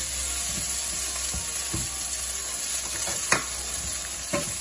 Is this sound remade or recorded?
recorded